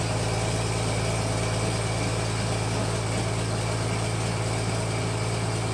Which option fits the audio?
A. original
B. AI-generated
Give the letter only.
A